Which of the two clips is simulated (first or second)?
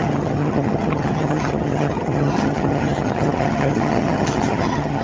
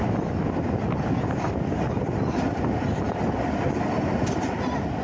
first